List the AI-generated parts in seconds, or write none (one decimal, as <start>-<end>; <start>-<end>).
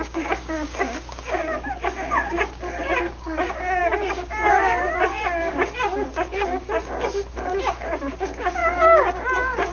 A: 0.0-9.7